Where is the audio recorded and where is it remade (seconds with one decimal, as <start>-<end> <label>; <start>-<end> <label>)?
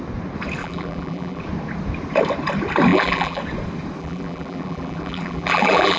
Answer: 0.0-0.6 recorded; 0.6-1.4 remade; 1.4-2.9 recorded; 2.9-3.4 remade; 3.4-4.0 recorded; 4.0-6.0 remade